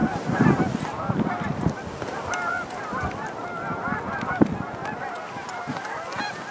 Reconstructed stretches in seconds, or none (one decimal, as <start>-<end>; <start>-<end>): none